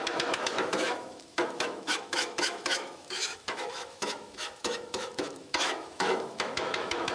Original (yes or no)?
no